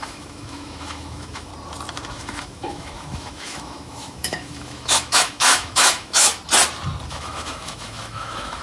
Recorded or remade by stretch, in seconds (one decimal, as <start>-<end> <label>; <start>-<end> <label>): 0.0-1.5 remade; 1.5-2.1 recorded; 2.1-6.3 remade; 6.3-7.1 recorded; 7.1-8.6 remade